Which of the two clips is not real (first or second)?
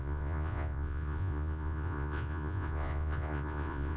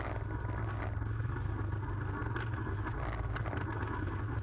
first